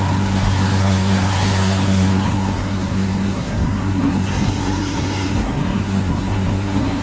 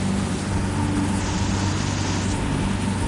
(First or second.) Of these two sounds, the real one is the second